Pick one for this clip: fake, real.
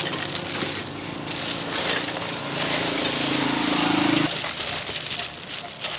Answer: real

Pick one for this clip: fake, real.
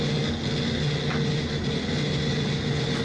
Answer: real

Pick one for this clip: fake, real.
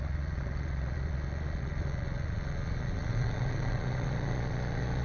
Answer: fake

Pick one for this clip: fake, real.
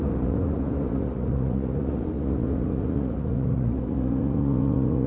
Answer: fake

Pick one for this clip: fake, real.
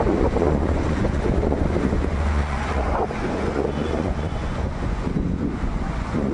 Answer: fake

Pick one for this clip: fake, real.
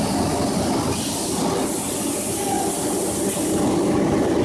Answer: real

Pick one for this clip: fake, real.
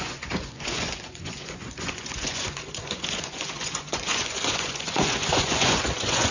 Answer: fake